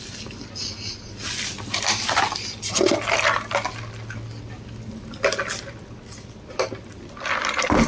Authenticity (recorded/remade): recorded